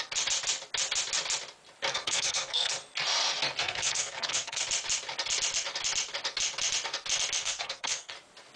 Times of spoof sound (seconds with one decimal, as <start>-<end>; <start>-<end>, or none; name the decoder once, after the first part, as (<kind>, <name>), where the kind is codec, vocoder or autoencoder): 1.9-2.7 (codec, SNAC); 3.6-4.6; 7.4-8.1